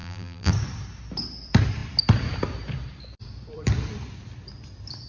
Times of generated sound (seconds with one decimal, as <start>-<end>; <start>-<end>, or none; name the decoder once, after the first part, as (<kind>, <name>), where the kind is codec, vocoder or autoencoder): 0.0-0.5 (vocoder, BigVGAN v2)

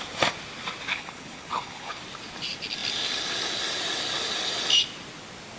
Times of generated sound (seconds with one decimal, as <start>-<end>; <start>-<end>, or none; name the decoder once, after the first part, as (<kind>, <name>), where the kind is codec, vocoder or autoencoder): 0.9-2.0 (codec, HILCodec)

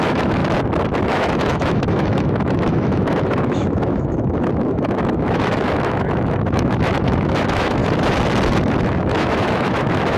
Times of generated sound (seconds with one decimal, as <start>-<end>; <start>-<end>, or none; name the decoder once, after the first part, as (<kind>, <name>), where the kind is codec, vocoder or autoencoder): 0.0-0.4 (autoencoder, DAC-VAE); 1.0-7.8; 8.8-10.2

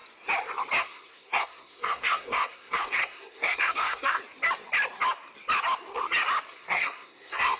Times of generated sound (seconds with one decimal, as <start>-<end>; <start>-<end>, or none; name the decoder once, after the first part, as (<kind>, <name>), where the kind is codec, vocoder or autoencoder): 0.8-4.2 (codec, SNAC); 6.5-7.6

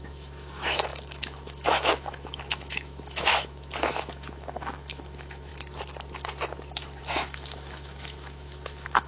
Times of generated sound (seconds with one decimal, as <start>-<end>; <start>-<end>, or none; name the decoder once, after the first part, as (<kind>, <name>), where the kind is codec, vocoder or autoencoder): 0.0-5.5 (autoencoder, DAC-VAE); 7.0-9.1

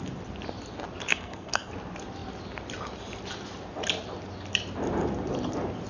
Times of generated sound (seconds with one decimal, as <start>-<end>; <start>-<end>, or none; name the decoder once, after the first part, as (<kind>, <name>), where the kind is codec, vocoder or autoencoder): 1.1-1.7 (codec, SNAC)

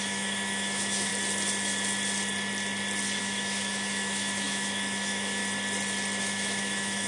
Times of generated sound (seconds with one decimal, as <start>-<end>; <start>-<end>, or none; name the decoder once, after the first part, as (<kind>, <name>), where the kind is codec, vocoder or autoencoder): 0.0-1.1 (autoencoder, DAC-VAE); 3.2-5.4; 6.2-7.1

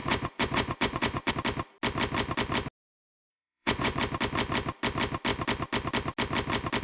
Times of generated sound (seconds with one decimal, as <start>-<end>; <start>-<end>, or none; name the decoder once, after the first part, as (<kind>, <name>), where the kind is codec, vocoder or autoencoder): 0.0-1.3 (vocoder, Vocos); 3.3-4.0